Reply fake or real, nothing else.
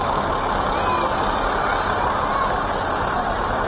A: real